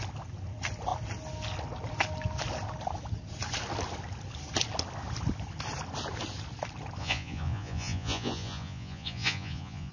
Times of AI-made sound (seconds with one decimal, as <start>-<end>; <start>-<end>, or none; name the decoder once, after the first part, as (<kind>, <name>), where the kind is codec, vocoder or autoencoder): 7.0-9.9 (vocoder, Vocos)